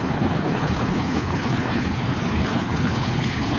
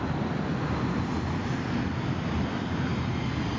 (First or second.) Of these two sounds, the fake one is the first